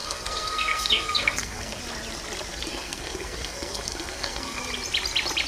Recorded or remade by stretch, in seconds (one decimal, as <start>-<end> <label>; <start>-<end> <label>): 0.0-1.8 remade; 1.8-2.7 recorded; 2.7-4.6 remade; 4.6-5.5 recorded